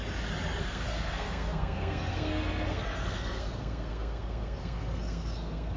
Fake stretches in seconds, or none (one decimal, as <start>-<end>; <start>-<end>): 0.6-5.8